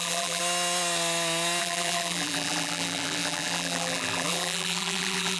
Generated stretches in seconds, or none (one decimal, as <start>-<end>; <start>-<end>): 0.0-0.4; 1.6-5.4